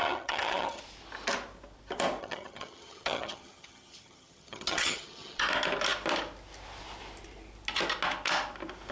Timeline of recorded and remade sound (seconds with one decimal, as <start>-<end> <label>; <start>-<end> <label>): 0.0-0.8 remade; 0.8-2.2 recorded; 2.2-5.4 remade; 5.4-8.9 recorded